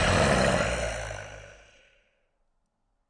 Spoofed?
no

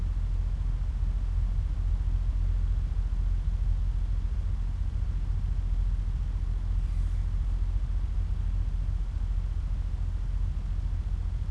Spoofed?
no